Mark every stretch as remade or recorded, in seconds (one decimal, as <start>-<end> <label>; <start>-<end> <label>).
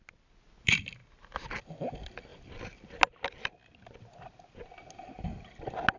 0.0-6.0 recorded